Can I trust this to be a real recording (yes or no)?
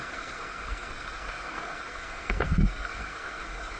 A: no